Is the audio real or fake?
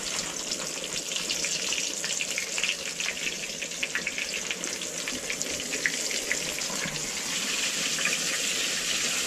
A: real